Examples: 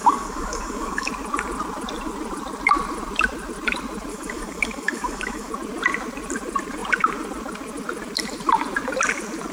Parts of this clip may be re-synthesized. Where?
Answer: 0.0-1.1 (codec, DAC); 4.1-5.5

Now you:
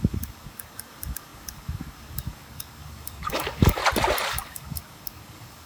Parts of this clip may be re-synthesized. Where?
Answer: 0.0-3.8 (codec, DAC); 4.3-5.7